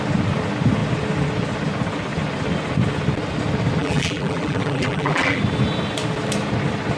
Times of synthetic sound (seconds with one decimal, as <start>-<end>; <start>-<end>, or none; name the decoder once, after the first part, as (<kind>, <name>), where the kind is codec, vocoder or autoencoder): 3.8-5.4 (vocoder, BigVGAN v2)